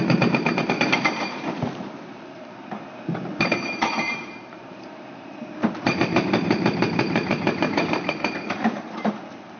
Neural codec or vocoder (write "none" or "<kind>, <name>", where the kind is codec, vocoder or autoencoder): vocoder, BigVGAN v2